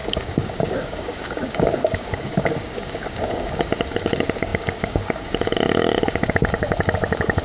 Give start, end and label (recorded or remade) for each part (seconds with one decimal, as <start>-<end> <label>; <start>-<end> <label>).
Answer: 0.0-7.4 remade